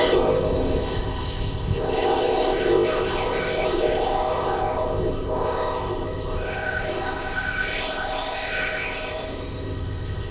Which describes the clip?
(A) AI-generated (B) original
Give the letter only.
A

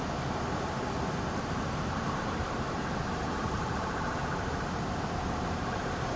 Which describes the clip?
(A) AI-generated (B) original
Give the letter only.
A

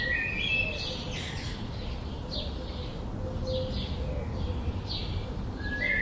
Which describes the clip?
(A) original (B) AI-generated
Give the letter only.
A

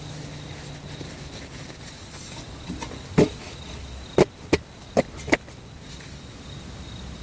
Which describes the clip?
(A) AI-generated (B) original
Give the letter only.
B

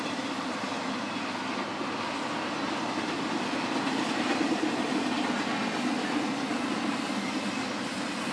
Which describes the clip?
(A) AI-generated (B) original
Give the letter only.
B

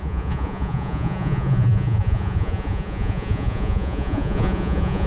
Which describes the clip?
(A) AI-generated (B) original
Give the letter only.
A